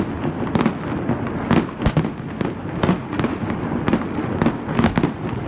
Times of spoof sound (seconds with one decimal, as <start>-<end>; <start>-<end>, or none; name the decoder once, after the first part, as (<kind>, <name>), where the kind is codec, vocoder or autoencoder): none